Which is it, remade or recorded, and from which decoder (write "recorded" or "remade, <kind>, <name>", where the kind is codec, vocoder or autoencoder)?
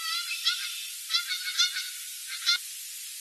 recorded